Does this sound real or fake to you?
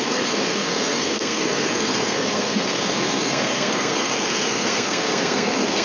fake